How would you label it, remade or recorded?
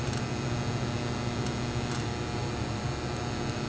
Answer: recorded